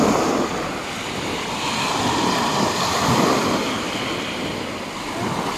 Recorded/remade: recorded